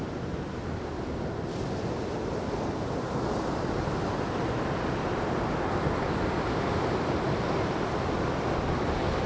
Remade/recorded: recorded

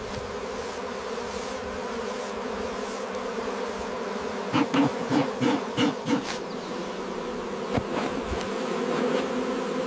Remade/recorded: recorded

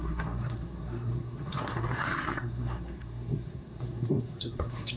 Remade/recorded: remade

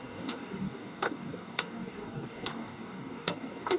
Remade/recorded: remade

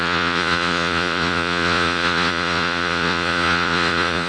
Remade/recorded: remade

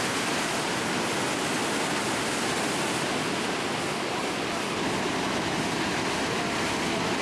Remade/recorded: recorded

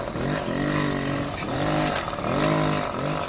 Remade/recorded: recorded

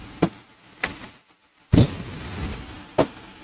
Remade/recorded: recorded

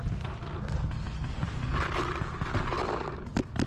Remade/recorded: recorded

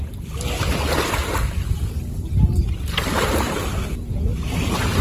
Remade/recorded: recorded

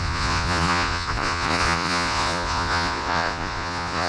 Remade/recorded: remade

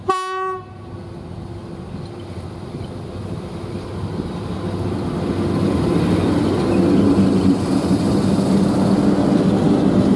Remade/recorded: recorded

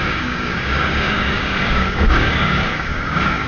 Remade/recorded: remade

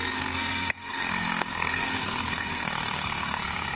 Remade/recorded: remade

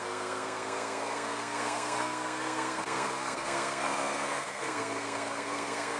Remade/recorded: remade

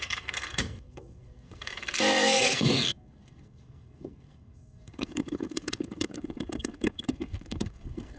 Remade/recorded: remade